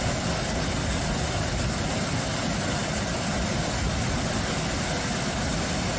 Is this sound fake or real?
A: real